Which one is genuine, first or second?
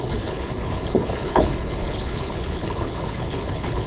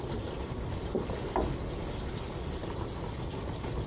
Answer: second